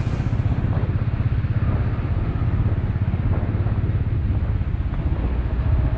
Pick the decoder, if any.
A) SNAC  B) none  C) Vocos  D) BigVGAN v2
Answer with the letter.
B